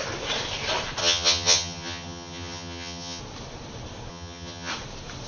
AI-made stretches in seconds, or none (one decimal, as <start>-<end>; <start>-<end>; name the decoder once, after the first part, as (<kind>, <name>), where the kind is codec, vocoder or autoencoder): 1.0-3.2 (vocoder, HiFi-GAN); 4.1-4.7